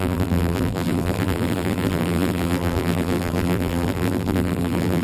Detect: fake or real fake